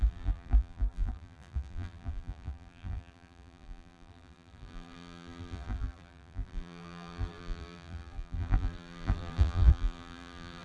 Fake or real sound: fake